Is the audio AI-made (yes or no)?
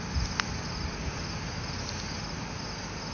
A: no